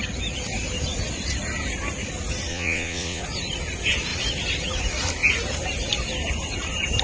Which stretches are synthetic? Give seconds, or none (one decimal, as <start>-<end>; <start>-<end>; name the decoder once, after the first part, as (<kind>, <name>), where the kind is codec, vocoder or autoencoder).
2.5-3.2 (vocoder, Vocos)